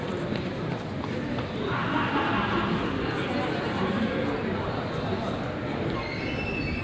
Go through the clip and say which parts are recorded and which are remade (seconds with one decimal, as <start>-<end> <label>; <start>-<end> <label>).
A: 0.0-6.8 recorded